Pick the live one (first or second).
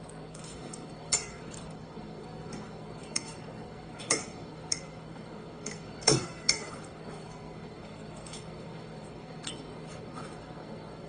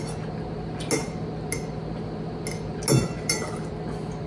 second